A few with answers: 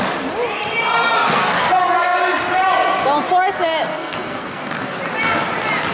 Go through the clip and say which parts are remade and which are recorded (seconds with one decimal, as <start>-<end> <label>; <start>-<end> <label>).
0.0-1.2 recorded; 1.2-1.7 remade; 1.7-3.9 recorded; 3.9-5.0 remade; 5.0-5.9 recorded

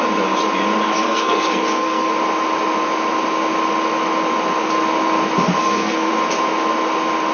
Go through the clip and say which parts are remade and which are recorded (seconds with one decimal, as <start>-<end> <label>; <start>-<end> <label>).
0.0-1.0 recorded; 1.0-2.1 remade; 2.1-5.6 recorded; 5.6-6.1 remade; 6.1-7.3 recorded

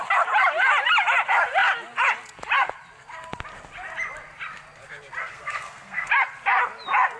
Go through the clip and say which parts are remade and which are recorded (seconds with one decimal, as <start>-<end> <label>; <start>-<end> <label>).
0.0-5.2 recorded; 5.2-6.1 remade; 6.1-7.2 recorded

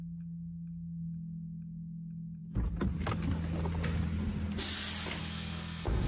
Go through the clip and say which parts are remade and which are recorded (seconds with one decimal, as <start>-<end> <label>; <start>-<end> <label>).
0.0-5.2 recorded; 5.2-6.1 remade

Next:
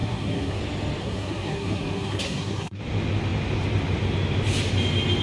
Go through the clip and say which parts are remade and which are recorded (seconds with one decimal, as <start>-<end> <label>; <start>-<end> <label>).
0.0-0.6 remade; 0.6-1.0 recorded; 1.0-2.8 remade; 2.8-5.2 recorded